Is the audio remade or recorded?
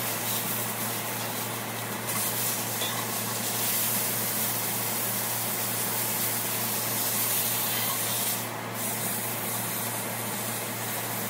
recorded